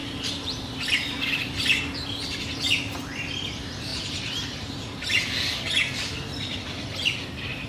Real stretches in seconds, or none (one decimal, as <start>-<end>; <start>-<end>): 0.0-7.7